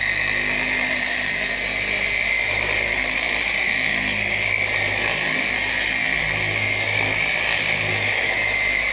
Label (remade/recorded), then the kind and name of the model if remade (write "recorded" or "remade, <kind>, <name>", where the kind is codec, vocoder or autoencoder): recorded